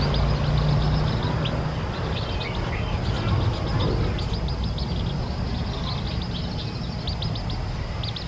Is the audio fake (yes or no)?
no